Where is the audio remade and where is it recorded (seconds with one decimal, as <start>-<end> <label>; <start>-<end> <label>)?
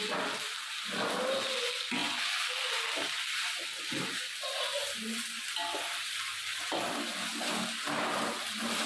0.0-8.9 recorded